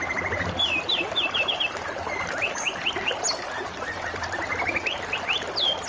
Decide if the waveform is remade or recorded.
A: recorded